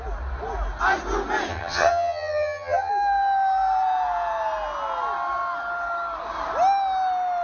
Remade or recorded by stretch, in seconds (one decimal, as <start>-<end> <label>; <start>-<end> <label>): 0.0-1.5 recorded; 1.5-2.9 remade; 2.9-7.4 recorded